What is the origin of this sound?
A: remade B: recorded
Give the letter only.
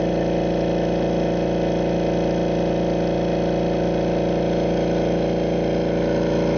B